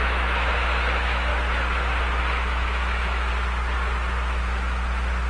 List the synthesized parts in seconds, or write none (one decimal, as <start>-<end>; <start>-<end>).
0.0-1.3; 2.2-3.3